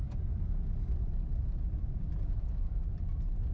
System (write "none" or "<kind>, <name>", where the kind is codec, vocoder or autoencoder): none